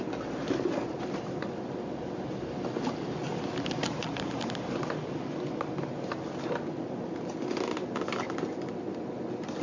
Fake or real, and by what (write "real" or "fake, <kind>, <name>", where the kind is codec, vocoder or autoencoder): real